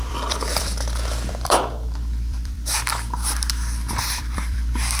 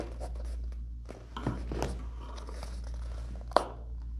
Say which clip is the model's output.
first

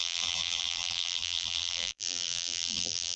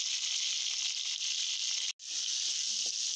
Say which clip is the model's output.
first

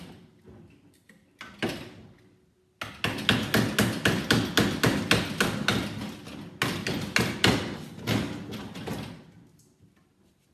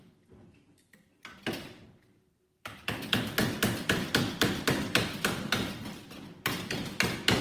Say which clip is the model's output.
second